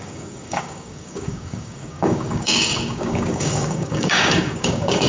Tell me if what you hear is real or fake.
fake